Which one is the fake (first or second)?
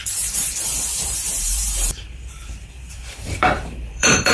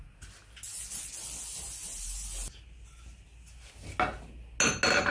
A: first